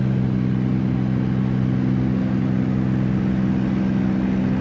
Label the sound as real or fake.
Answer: real